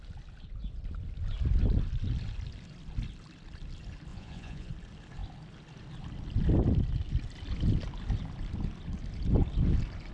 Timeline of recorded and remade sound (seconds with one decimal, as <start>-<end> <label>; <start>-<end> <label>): 0.0-4.1 recorded; 4.1-4.7 remade; 4.7-10.1 recorded